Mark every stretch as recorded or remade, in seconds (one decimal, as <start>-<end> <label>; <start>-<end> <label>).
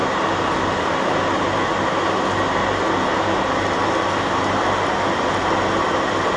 0.0-6.4 recorded